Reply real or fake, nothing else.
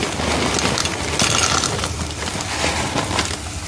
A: real